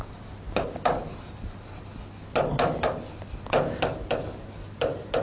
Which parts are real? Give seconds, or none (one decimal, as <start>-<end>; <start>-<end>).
0.0-5.2